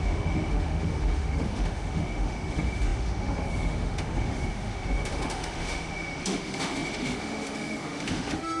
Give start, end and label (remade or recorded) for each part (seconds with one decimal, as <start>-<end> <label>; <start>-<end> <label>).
0.0-8.6 remade